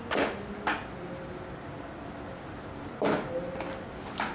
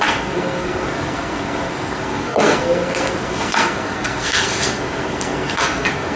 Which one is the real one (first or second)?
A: first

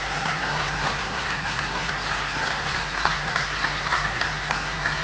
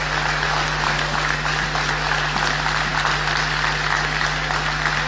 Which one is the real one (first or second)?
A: second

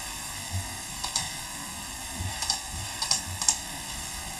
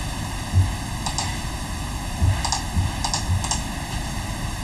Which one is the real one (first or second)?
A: second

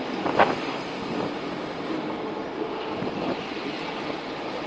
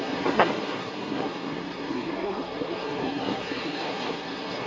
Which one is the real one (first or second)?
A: first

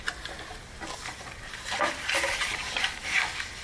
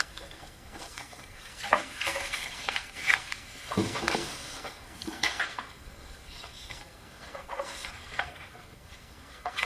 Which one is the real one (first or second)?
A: first